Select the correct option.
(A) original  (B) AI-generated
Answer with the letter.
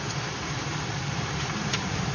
B